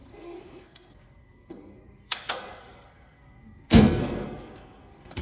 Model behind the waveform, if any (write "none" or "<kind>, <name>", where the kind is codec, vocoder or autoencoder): codec, SNAC